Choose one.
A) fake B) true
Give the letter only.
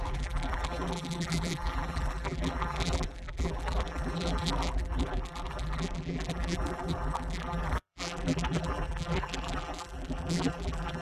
A